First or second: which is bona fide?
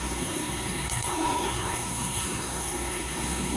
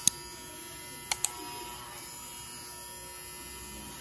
second